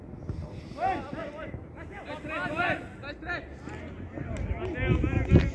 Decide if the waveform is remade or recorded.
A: recorded